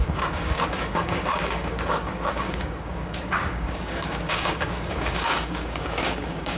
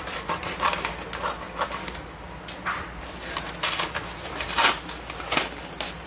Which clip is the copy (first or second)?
first